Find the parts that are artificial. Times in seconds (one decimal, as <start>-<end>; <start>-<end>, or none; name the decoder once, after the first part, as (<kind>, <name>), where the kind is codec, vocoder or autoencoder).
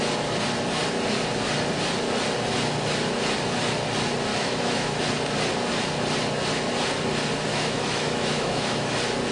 4.3-5.0 (autoencoder, DAC-VAE); 7.5-8.9